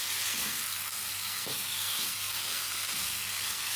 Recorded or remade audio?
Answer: remade